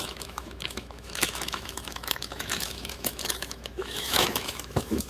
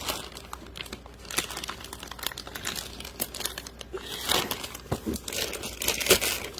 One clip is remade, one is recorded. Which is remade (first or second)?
first